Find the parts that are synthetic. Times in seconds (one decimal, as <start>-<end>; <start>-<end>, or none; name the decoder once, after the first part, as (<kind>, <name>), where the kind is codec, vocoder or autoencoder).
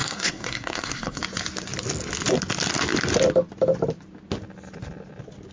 0.0-1.2 (codec, SNAC)